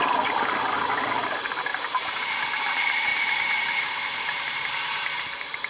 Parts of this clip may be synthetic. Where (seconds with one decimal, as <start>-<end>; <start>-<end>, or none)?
1.7-2.4; 3.1-5.7